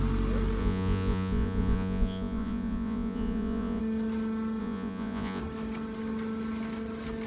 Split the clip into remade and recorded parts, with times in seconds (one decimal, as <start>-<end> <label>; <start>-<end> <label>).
0.0-0.6 recorded; 0.6-3.8 remade; 3.8-4.6 recorded; 4.6-5.4 remade; 5.4-7.3 recorded